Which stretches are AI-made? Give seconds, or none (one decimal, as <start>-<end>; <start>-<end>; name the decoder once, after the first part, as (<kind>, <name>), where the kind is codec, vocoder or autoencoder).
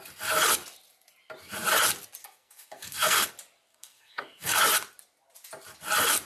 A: 2.2-3.3 (codec, SNAC); 3.7-4.6